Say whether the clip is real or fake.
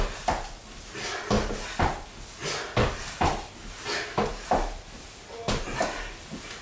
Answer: real